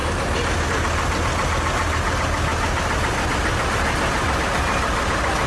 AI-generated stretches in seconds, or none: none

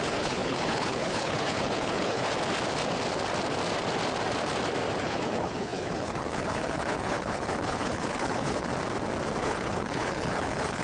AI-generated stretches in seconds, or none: 0.0-2.2 (codec, HILCodec); 5.0-8.7; 9.4-10.8

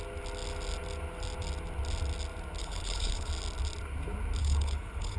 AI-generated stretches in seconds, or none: 2.6-3.3 (codec, HILCodec); 4.4-5.2

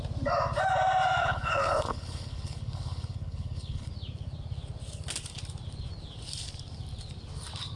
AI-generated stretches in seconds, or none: 1.2-3.9 (codec, HILCodec)